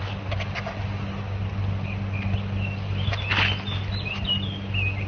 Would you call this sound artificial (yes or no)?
no